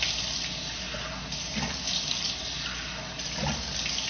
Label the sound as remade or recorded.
recorded